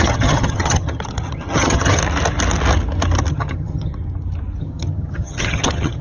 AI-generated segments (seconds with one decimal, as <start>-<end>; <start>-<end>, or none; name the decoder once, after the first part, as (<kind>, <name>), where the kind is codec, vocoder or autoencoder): 0.0-2.0 (vocoder, HiFi-GAN); 3.3-3.9; 4.6-6.0

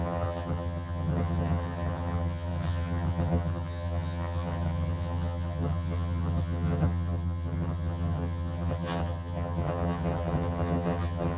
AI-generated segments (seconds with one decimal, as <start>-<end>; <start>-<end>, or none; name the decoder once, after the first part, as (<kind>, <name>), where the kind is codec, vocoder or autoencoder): 0.0-11.4 (vocoder, HiFi-GAN)

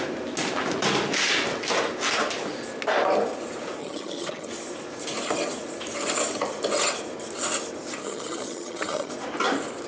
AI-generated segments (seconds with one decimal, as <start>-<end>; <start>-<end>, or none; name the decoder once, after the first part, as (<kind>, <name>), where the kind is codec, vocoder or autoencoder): 3.8-4.5 (vocoder, HiFi-GAN); 8.0-9.1

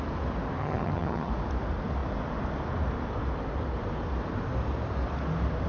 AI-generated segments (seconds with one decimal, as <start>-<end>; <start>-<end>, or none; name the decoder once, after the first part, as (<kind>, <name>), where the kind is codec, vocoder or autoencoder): 0.6-1.3 (vocoder, HiFi-GAN)

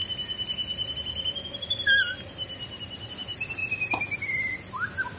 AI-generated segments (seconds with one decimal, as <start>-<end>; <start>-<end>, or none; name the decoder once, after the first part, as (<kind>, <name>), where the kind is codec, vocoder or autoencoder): none

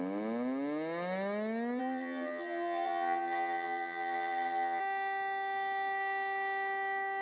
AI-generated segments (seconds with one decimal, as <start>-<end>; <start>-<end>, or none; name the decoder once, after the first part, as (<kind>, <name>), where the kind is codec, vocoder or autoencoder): 1.8-4.8 (vocoder, HiFi-GAN)

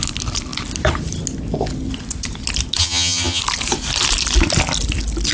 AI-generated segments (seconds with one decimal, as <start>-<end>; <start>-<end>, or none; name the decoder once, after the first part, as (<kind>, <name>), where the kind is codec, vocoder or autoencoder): 2.8-3.4 (vocoder, HiFi-GAN)